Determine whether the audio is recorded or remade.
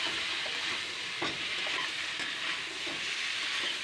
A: recorded